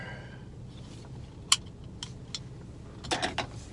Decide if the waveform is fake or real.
real